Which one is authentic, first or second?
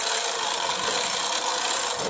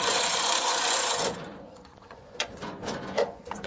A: first